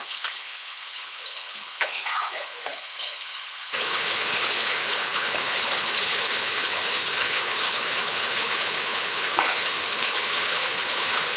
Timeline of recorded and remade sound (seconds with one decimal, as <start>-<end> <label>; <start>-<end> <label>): 0.0-11.4 remade